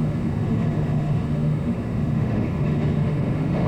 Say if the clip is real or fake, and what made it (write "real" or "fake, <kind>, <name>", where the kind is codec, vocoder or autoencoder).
fake, autoencoder, DAC-VAE